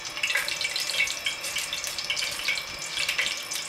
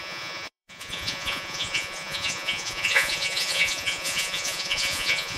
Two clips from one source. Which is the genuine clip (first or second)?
first